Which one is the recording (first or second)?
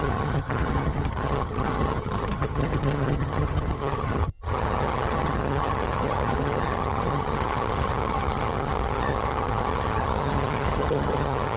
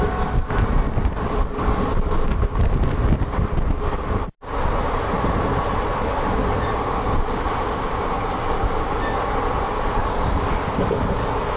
second